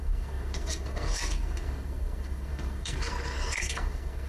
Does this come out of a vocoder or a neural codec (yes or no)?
yes